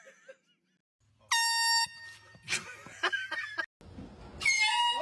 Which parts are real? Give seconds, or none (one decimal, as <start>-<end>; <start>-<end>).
0.0-5.0